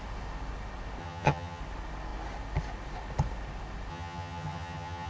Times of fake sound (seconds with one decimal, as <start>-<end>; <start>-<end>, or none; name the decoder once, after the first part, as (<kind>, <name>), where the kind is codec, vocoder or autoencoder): 1.0-1.6 (vocoder, HiFi-GAN); 3.9-5.1